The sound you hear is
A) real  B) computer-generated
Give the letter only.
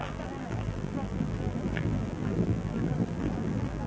B